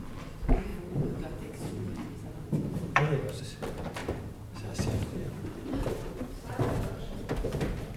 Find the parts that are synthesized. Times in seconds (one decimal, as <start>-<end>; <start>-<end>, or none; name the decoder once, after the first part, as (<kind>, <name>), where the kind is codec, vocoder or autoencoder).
0.7-3.4 (vocoder, BigVGAN v2); 4.0-6.1